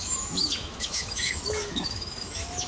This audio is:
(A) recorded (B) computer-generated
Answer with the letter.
B